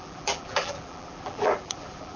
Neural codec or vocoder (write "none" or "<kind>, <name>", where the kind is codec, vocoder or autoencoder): vocoder, BigVGAN v2